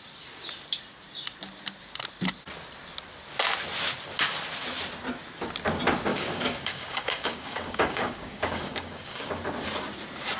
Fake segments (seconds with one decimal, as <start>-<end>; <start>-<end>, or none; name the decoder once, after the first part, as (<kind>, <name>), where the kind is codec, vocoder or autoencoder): 6.1-9.4 (codec, DAC)

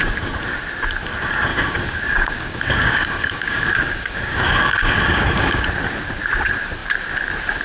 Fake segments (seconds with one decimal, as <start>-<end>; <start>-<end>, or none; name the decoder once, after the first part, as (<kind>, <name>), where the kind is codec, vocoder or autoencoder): 1.5-5.6 (codec, DAC)

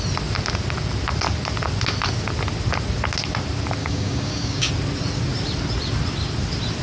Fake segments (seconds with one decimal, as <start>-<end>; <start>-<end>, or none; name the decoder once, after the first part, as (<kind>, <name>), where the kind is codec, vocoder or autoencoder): 3.8-4.7 (codec, DAC)